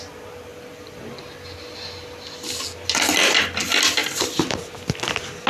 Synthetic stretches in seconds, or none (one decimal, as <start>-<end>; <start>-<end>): none